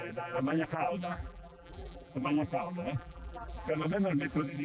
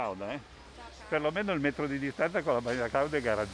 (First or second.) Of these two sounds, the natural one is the second